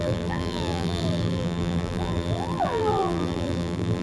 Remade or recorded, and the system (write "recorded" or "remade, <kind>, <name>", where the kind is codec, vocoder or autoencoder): remade, vocoder, BigVGAN v2